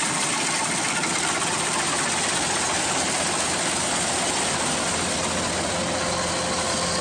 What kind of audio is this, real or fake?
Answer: real